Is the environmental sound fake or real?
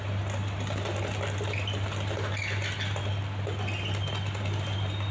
real